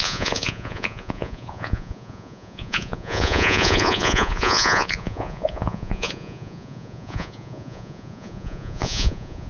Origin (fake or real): fake